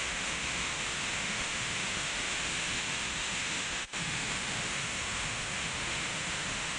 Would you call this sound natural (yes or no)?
no